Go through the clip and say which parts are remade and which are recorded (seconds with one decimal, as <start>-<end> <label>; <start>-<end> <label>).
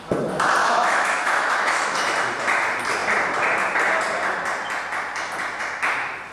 0.0-0.6 recorded; 0.6-2.0 remade; 2.0-6.3 recorded